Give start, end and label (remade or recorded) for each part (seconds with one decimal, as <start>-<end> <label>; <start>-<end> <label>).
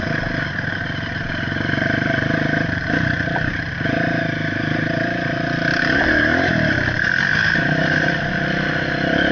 0.0-9.3 recorded